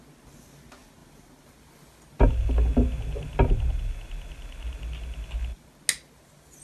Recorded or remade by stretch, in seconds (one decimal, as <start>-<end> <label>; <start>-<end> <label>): 0.0-6.6 recorded